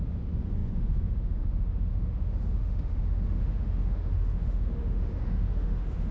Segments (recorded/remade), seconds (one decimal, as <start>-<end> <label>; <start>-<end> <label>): 0.0-6.1 remade